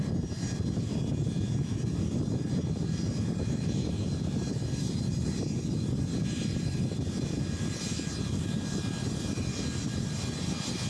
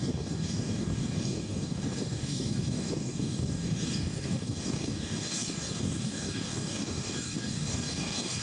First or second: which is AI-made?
second